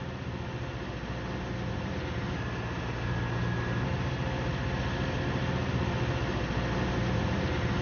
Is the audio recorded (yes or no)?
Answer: yes